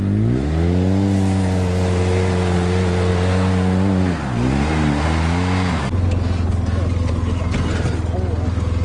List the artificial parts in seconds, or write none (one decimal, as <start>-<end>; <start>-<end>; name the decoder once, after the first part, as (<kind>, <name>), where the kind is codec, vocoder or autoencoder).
none